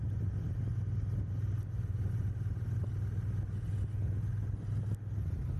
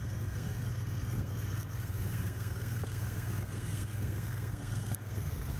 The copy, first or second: second